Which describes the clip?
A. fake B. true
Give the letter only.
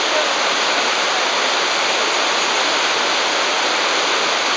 B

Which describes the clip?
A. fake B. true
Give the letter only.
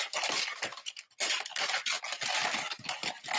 B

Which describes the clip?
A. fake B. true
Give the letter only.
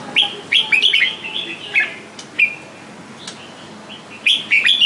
B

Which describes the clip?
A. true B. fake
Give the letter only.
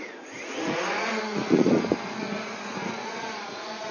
B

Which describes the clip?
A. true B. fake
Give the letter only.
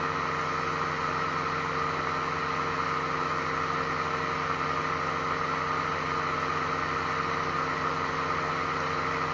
A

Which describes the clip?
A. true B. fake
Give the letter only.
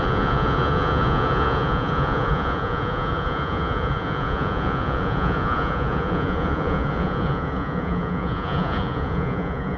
B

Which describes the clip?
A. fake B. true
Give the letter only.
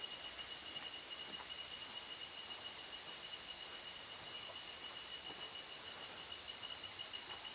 B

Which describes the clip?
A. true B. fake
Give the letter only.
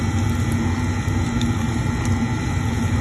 A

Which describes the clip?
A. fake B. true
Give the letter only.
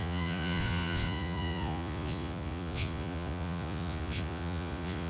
A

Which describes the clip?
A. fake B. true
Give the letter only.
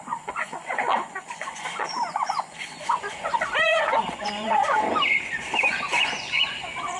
A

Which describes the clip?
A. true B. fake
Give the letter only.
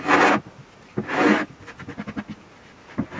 A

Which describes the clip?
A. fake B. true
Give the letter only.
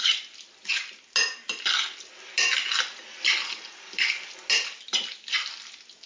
B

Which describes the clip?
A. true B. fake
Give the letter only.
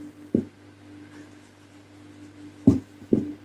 A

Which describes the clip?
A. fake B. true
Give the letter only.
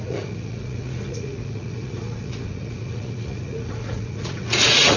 A